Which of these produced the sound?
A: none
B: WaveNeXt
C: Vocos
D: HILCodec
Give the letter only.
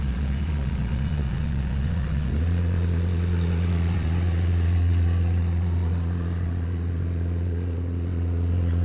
C